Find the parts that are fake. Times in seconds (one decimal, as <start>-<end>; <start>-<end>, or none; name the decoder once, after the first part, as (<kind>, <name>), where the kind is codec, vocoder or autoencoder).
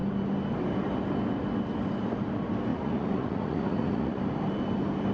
2.7-4.2 (vocoder, Vocos)